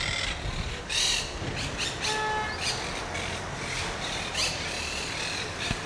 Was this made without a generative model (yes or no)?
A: yes